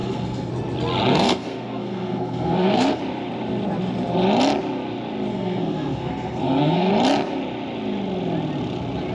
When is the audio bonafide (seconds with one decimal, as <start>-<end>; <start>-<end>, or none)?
0.5-1.1; 3.0-5.3; 6.9-9.1